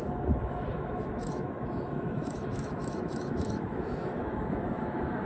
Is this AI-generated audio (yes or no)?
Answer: yes